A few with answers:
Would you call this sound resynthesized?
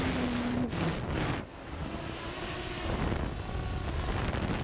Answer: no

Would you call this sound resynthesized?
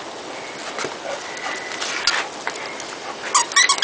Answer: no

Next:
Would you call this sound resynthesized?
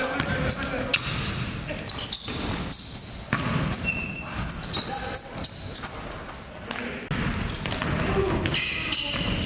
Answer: no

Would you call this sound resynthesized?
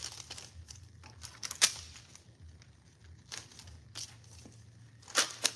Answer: no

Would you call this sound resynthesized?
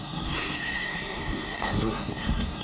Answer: yes